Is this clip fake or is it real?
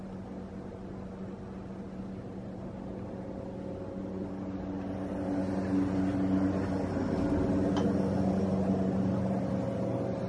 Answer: real